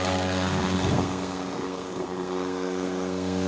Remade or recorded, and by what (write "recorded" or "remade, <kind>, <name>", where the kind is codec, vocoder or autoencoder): remade, codec, SNAC